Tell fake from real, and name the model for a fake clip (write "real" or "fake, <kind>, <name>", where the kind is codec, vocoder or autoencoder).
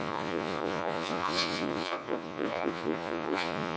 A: fake, vocoder, Vocos